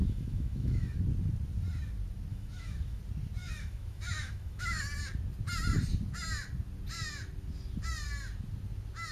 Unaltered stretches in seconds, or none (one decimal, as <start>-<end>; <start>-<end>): 1.0-2.3; 3.0-3.4; 4.8-9.1